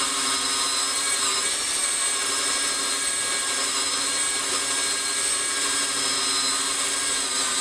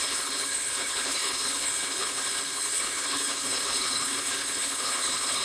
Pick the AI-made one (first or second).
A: second